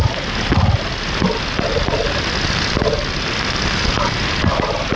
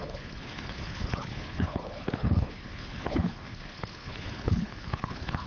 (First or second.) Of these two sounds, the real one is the first